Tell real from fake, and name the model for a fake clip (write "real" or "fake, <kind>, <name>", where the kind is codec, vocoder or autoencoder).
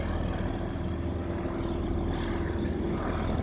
real